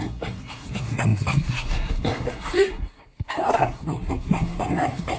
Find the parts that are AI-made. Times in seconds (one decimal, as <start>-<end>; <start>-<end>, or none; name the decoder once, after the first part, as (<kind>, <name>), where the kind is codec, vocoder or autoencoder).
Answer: 0.0-5.2 (codec, SNAC)